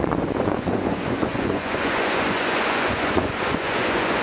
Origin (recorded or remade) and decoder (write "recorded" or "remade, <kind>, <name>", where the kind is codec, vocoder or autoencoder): remade, vocoder, Vocos